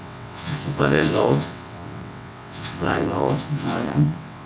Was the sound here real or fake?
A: fake